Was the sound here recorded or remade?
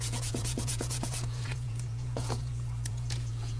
remade